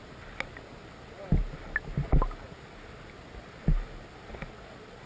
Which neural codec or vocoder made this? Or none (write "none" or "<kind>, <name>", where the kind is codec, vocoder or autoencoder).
none